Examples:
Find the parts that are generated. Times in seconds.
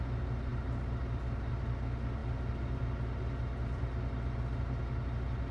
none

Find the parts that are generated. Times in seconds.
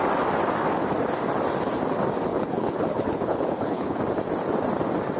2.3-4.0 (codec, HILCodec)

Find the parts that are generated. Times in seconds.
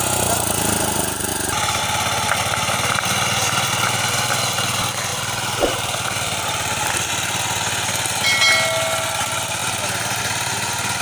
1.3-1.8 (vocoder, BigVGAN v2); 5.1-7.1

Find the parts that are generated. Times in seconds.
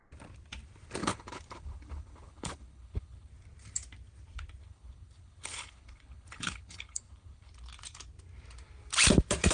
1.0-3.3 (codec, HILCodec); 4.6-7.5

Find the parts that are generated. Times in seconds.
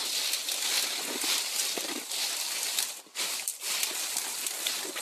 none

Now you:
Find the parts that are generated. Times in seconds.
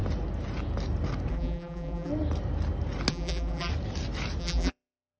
1.3-2.1 (vocoder, BigVGAN v2); 3.1-3.7; 4.4-5.2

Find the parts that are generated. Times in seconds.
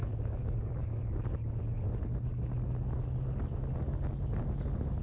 0.0-1.0 (codec, DAC)